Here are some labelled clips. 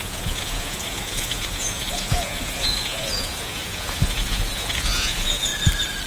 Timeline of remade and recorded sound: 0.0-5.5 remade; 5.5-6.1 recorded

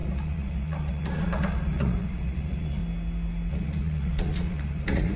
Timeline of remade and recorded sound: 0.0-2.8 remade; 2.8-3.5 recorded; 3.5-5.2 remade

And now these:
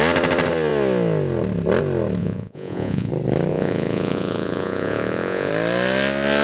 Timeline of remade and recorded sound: 0.0-2.2 recorded; 2.2-3.1 remade; 3.1-3.5 recorded; 3.5-5.5 remade; 5.5-6.4 recorded

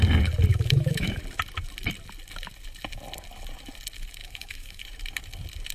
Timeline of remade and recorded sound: 0.0-0.5 recorded; 0.5-1.2 remade; 1.2-4.2 recorded; 4.2-4.8 remade; 4.8-5.7 recorded

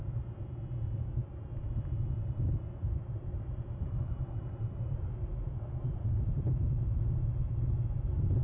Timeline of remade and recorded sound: 0.0-2.2 recorded; 2.2-7.2 remade; 7.2-8.4 recorded

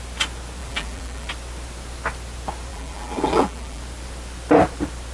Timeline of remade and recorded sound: 0.0-0.6 recorded; 0.6-1.3 remade; 1.3-2.7 recorded; 2.7-3.8 remade; 3.8-5.1 recorded

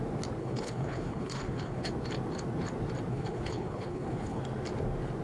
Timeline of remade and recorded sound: 0.0-0.4 recorded; 0.4-1.9 remade; 1.9-3.1 recorded; 3.1-4.4 remade; 4.4-5.2 recorded